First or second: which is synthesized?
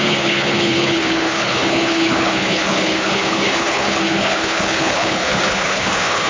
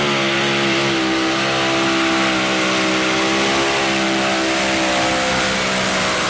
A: first